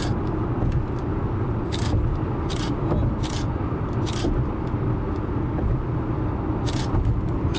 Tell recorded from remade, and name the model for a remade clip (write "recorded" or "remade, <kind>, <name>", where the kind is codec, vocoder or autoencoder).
recorded